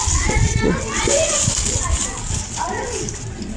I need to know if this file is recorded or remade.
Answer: recorded